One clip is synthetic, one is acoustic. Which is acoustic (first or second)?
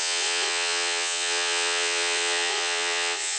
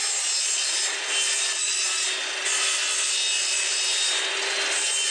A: second